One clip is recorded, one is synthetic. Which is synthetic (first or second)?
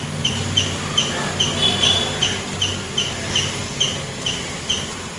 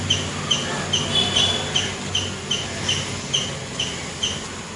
first